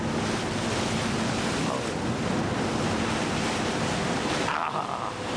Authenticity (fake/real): real